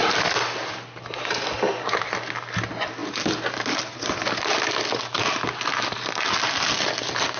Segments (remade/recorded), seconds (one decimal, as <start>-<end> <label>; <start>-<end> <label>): 0.0-7.4 recorded